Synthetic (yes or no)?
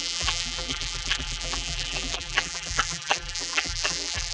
yes